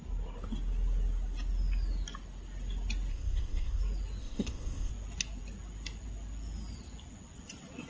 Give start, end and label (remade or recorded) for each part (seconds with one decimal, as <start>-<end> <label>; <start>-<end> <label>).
0.0-3.1 recorded; 3.1-3.8 remade; 3.8-4.2 recorded; 4.2-4.9 remade; 4.9-7.9 recorded